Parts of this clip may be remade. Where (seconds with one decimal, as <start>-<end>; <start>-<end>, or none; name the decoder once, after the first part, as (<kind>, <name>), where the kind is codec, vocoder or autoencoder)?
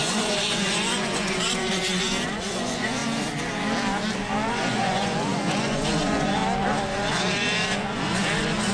0.0-3.0 (vocoder, Vocos); 4.5-6.4; 6.9-8.7